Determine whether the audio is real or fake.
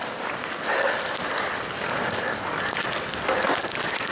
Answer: real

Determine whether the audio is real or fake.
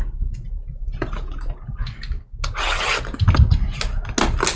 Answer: real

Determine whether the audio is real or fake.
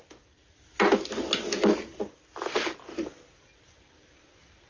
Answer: real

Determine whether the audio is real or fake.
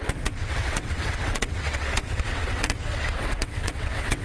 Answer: fake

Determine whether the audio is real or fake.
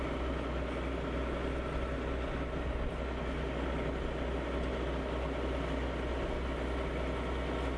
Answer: real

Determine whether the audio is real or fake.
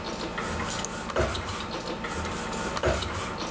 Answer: real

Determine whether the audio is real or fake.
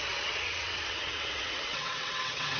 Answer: fake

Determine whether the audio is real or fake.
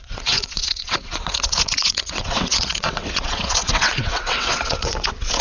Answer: fake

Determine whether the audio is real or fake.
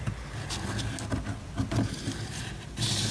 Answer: real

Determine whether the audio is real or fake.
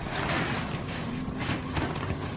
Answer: real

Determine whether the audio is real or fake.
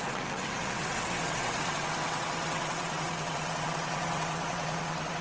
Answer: fake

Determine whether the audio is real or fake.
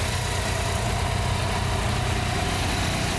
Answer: real